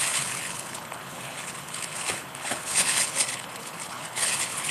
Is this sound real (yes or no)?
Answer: no